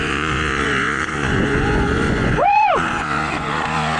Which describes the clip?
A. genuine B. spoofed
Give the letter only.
B